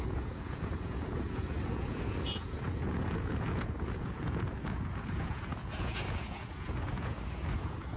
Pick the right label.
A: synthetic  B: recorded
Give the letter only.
A